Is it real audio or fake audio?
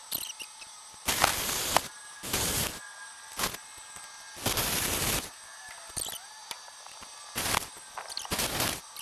real